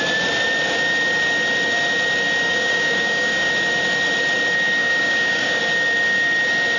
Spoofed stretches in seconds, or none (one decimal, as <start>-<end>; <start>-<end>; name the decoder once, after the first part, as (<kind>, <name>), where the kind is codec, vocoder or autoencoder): 2.4-3.5 (codec, DAC); 4.8-5.6